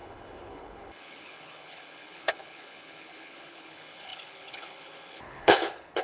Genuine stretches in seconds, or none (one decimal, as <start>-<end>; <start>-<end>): none